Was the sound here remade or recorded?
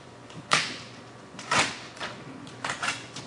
remade